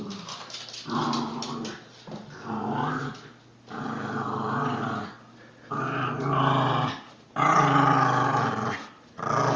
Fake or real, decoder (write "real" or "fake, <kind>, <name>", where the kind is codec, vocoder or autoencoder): real